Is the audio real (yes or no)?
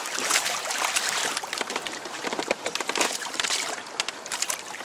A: no